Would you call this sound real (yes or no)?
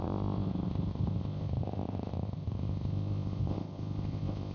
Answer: no